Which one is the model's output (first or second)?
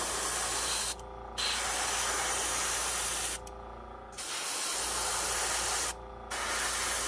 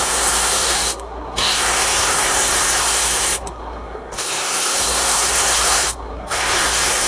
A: second